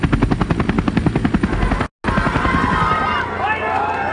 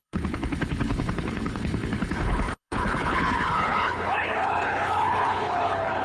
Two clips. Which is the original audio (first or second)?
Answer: first